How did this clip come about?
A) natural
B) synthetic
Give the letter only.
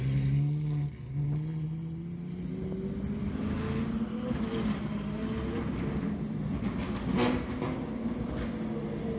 A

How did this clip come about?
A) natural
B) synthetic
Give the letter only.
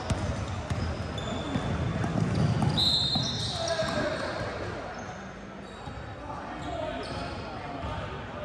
A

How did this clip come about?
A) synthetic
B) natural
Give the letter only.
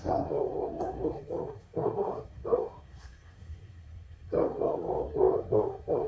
A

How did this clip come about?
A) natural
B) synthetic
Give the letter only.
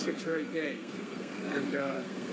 B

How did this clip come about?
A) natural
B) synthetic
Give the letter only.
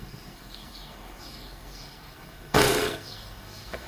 B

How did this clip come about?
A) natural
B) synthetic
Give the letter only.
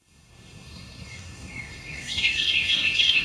B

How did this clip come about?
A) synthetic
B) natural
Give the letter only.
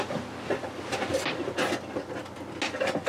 B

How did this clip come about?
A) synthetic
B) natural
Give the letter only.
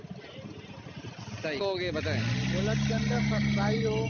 B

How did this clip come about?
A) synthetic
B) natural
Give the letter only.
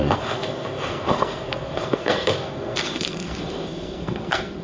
A